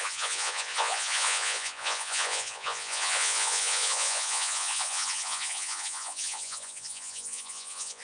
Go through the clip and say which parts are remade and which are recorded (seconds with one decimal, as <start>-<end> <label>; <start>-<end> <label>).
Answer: 0.0-8.0 remade